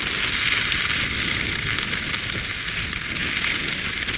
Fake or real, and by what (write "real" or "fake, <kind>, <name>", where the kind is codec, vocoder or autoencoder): real